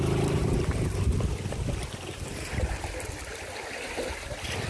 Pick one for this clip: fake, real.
real